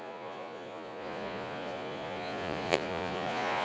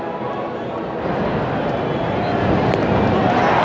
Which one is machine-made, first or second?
first